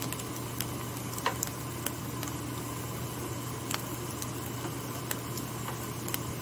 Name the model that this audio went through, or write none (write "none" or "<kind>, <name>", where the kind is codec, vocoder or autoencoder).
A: none